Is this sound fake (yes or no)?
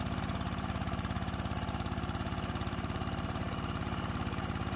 yes